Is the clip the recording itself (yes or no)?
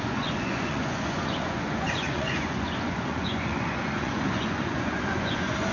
no